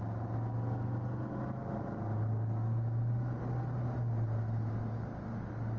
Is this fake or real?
real